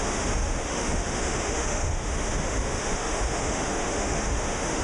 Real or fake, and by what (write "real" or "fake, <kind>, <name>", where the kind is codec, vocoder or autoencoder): fake, autoencoder, DAC-VAE